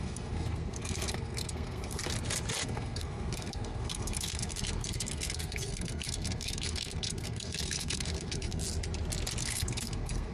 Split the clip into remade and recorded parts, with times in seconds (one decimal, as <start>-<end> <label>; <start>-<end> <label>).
0.0-2.0 remade; 2.0-2.6 recorded; 2.6-8.6 remade; 8.6-9.4 recorded; 9.4-10.3 remade